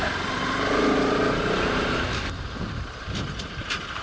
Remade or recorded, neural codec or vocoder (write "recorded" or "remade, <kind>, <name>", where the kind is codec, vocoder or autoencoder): recorded